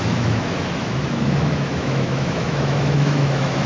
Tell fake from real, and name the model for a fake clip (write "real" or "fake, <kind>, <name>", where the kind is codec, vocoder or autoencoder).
fake, autoencoder, DAC-VAE